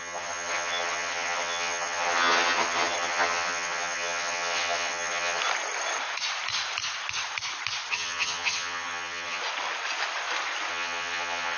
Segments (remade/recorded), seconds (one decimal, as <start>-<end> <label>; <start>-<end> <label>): 0.0-5.4 remade; 5.4-7.9 recorded; 7.9-9.4 remade; 9.4-10.7 recorded; 10.7-11.6 remade